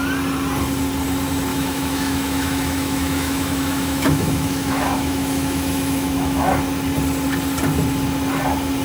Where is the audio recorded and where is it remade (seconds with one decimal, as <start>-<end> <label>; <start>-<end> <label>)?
0.0-1.5 recorded; 1.5-6.6 remade; 6.6-8.8 recorded